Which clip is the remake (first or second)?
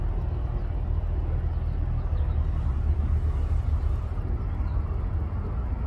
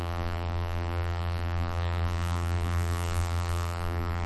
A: second